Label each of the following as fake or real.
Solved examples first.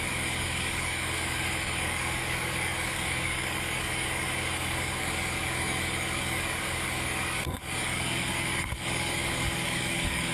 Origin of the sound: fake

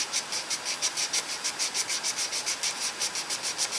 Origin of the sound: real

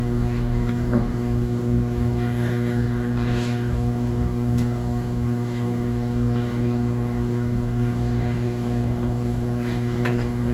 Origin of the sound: fake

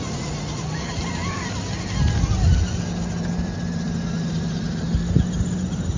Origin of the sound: real